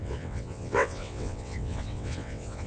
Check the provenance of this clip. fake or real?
fake